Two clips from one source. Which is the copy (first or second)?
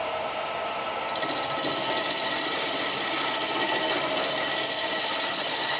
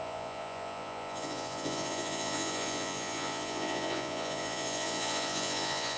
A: second